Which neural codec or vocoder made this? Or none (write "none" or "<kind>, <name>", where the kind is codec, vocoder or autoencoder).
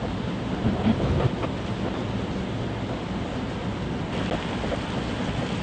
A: none